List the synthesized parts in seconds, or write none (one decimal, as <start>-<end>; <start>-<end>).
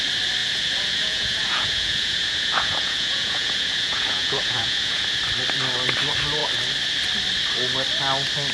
0.4-5.2